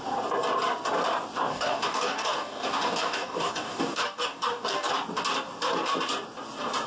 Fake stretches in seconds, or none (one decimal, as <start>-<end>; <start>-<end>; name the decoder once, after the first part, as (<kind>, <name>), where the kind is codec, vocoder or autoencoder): 1.5-4.9 (codec, DAC)